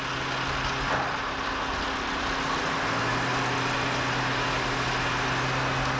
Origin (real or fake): real